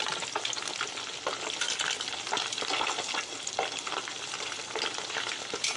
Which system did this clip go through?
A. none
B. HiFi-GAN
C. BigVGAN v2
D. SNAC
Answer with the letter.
A